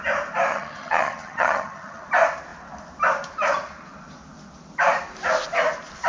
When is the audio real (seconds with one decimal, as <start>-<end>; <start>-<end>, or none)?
0.0-0.5; 2.0-6.1